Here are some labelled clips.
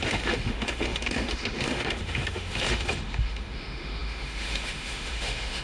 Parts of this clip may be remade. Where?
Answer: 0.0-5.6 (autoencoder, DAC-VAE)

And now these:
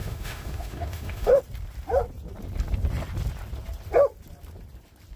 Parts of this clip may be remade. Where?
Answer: 0.0-1.4 (autoencoder, DAC-VAE)

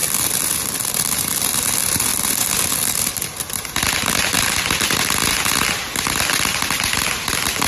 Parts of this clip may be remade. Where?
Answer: none

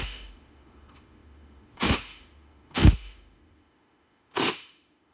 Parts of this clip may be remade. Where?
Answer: 0.0-5.1 (autoencoder, DAC-VAE)

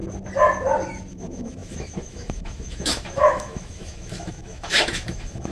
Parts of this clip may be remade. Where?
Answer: 1.1-5.5 (autoencoder, DAC-VAE)

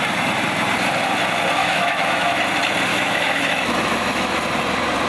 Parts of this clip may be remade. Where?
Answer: 1.6-2.4 (autoencoder, DAC-VAE); 2.9-4.4